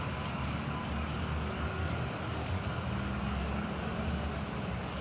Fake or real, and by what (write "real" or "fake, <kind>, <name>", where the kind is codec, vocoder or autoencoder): fake, codec, DAC